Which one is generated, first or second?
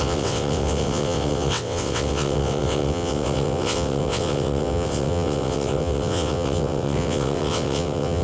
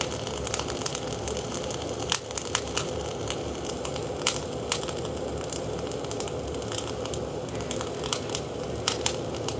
first